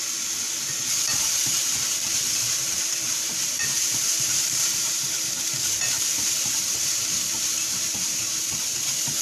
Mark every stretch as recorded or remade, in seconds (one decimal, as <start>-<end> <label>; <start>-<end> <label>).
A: 0.0-1.1 recorded; 1.1-5.5 remade; 5.5-6.5 recorded; 6.5-9.2 remade